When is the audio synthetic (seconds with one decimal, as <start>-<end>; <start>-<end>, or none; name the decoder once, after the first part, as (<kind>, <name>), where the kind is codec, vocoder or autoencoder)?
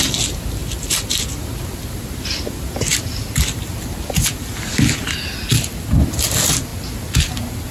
0.6-2.6 (vocoder, BigVGAN v2)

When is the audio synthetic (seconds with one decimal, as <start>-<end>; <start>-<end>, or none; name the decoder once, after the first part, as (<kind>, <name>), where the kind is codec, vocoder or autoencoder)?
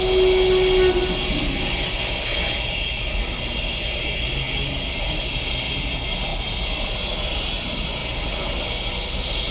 none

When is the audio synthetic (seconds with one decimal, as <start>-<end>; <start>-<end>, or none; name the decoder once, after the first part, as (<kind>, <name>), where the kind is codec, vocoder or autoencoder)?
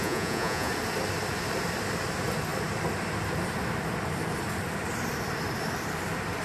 0.0-0.7 (vocoder, Vocos)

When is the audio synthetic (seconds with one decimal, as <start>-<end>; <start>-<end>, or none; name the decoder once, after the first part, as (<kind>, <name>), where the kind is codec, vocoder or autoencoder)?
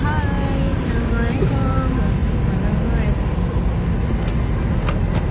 0.7-1.7 (vocoder, BigVGAN v2); 2.2-4.3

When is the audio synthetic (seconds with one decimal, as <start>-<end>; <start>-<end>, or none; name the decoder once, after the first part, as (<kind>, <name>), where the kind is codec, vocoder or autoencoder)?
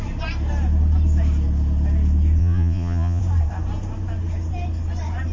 2.4-3.2 (vocoder, Vocos)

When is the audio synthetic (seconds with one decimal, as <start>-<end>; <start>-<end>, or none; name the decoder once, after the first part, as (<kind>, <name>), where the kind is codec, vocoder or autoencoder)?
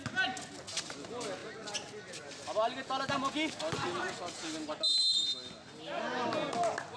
none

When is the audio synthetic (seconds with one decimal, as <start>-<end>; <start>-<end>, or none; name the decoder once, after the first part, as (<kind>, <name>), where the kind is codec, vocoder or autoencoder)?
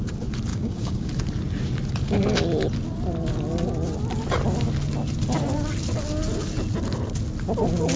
0.5-1.1 (codec, DAC)